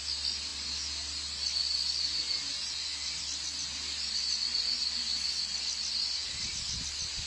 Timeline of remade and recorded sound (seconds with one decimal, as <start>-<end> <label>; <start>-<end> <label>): 0.0-7.3 recorded